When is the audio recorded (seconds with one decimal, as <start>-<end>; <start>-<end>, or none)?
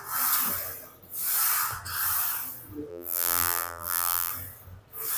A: 0.0-2.9; 4.3-5.2